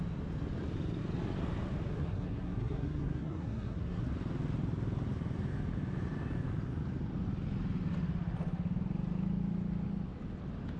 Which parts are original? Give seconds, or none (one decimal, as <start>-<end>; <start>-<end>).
0.0-1.9; 4.0-10.8